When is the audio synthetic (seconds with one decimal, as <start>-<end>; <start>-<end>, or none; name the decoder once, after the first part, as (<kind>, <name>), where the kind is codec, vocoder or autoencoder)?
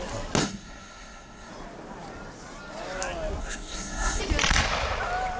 0.4-1.5 (codec, SNAC); 3.4-4.2